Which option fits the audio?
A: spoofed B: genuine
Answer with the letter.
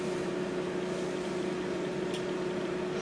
B